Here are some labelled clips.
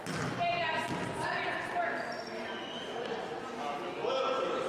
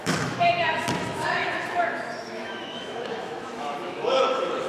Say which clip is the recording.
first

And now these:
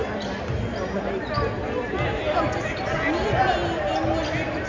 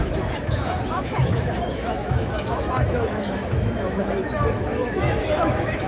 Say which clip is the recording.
first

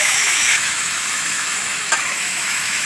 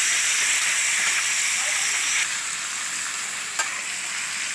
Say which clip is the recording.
second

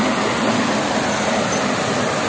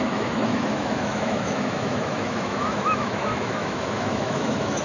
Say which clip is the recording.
first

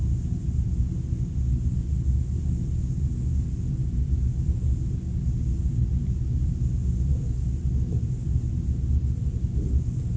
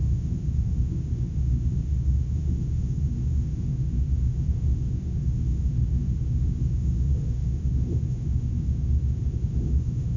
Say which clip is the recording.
first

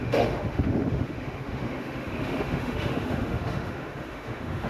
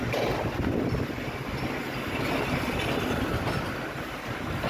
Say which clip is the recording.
second